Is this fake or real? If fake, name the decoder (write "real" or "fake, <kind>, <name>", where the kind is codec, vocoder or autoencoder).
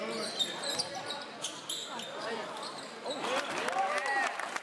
real